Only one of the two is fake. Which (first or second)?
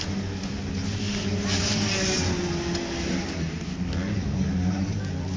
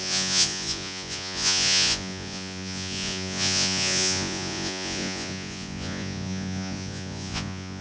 second